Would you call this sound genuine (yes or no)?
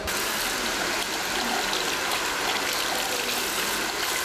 yes